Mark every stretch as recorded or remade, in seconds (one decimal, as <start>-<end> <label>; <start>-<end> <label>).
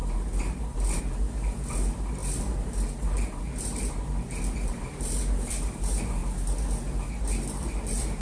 0.0-6.2 remade; 6.2-7.2 recorded; 7.2-8.2 remade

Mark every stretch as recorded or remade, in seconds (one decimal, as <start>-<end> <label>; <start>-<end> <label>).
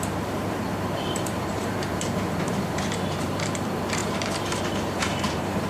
0.0-5.7 remade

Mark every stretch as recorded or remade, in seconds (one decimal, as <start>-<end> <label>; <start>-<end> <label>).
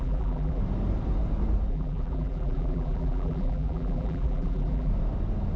0.0-0.6 remade; 0.6-1.7 recorded; 1.7-4.9 remade; 4.9-5.6 recorded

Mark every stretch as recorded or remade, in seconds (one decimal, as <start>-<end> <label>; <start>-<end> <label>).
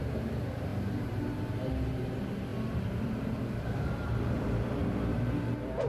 0.0-2.5 recorded; 2.5-5.4 remade; 5.4-5.9 recorded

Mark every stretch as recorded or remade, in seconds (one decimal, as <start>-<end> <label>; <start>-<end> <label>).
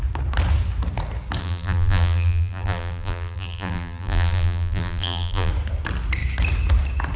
0.0-1.4 recorded; 1.4-5.5 remade; 5.5-7.2 recorded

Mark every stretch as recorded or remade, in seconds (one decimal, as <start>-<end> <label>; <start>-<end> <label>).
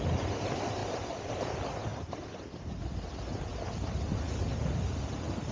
0.0-0.8 recorded; 0.8-1.3 remade; 1.3-1.9 recorded; 1.9-2.7 remade; 2.7-5.5 recorded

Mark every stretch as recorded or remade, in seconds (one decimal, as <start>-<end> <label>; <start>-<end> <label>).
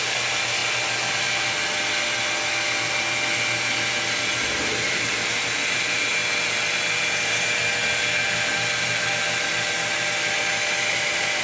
0.0-0.6 remade; 0.6-4.9 recorded; 4.9-6.2 remade; 6.2-10.9 recorded; 10.9-11.4 remade